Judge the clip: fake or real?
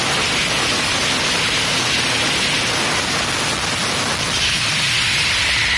real